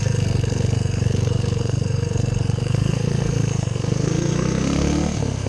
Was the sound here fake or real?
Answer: fake